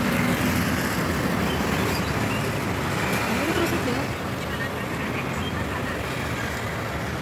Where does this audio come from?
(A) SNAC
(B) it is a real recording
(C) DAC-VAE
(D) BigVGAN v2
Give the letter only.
B